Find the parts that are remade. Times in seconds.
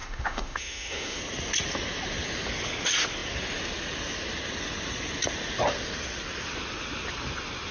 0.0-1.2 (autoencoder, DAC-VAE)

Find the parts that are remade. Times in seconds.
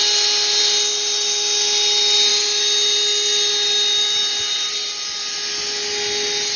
none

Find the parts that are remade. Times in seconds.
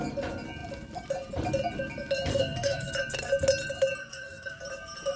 2.3-2.9 (codec, SNAC); 4.0-4.6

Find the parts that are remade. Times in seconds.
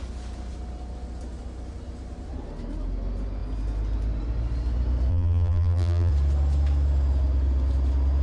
5.1-6.1 (vocoder, BigVGAN v2)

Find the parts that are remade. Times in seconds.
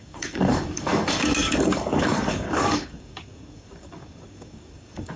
0.0-5.2 (codec, DAC)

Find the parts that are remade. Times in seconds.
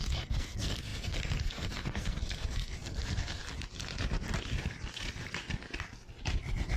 0.0-3.4 (codec, SNAC)